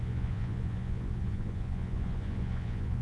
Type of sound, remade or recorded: remade